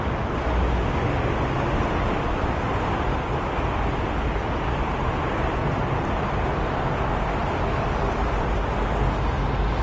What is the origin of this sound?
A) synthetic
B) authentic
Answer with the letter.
B